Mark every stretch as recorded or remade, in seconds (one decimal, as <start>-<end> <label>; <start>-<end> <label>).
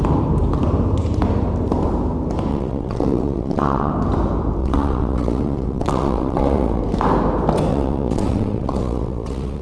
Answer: 0.0-2.5 recorded; 2.5-3.9 remade; 3.9-4.6 recorded; 4.6-6.8 remade; 6.8-7.7 recorded; 7.7-9.6 remade